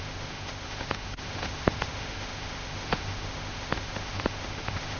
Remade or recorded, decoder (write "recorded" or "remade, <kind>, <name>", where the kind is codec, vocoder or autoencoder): remade, autoencoder, DAC-VAE